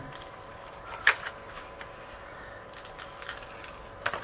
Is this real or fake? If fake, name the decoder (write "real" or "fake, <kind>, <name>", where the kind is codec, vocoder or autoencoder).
real